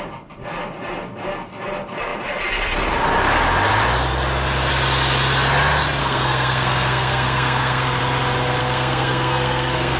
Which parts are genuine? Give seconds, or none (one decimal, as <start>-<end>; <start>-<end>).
0.0-6.0; 8.0-8.6